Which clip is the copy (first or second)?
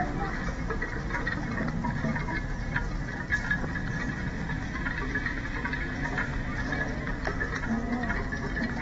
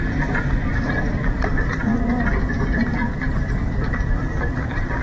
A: second